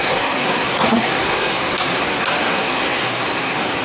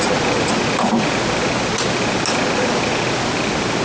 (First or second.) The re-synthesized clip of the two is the first